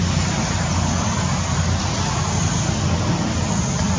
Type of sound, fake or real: real